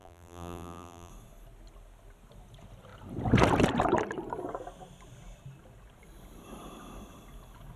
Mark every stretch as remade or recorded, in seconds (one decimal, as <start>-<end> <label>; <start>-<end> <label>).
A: 0.0-1.1 remade; 1.1-7.8 recorded